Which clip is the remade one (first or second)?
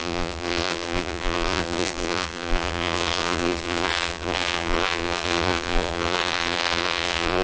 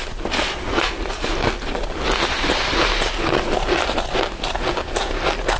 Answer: first